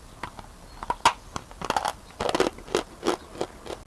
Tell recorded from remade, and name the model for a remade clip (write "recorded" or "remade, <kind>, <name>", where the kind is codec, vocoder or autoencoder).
recorded